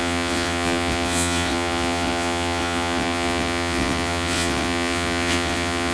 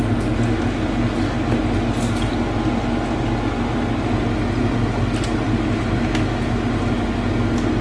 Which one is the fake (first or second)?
first